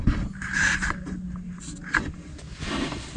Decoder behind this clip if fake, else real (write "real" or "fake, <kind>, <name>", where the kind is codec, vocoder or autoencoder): real